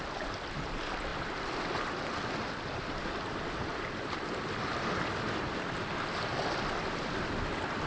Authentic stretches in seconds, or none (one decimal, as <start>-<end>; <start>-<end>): 0.0-7.9